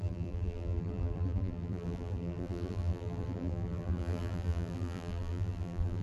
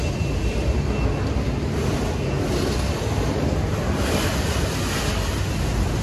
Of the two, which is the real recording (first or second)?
second